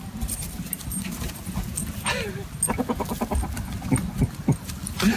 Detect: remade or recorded recorded